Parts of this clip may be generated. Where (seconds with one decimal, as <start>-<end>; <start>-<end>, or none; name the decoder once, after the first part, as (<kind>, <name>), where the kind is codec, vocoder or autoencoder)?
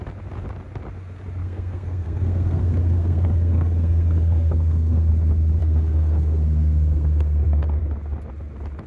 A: 1.4-5.1 (codec, SNAC); 5.6-7.8